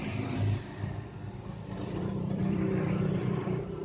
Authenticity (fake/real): fake